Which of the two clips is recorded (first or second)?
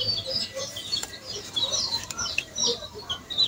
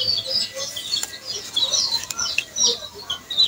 second